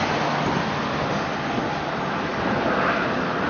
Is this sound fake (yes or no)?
no